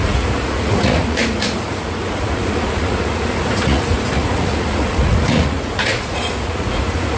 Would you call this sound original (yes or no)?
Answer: no